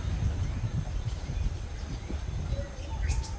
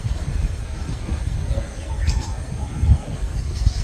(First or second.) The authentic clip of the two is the first